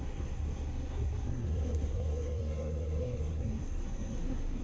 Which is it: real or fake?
fake